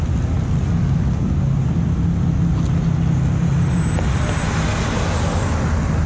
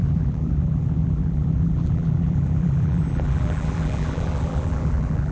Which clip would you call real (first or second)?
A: first